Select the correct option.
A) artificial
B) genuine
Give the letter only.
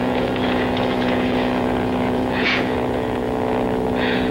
A